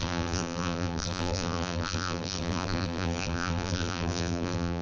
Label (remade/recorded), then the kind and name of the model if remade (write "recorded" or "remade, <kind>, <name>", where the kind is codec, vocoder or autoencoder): remade, vocoder, BigVGAN v2